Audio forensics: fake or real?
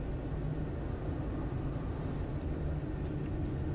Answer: real